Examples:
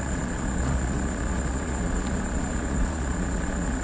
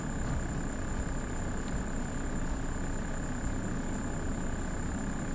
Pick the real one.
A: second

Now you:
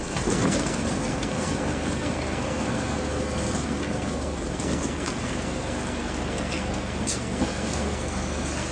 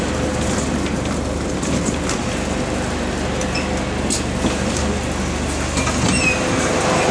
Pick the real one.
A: second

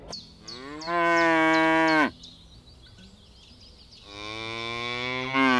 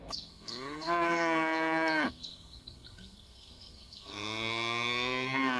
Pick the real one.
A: first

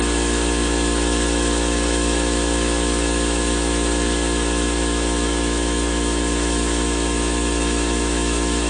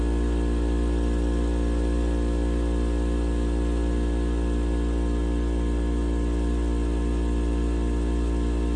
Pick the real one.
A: second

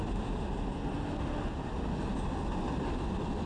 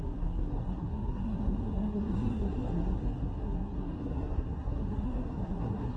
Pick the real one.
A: first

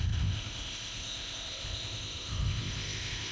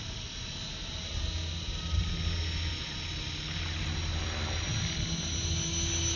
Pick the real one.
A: second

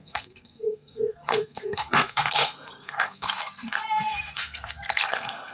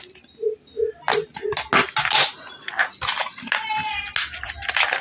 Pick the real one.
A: second